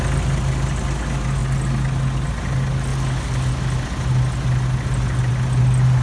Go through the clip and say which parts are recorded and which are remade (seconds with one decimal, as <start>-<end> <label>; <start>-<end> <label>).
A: 0.0-6.0 recorded